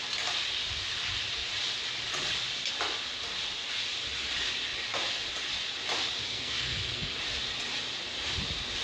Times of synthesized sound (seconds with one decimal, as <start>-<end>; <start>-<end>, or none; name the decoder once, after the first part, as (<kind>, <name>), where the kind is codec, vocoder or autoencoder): 6.3-7.2 (codec, SNAC)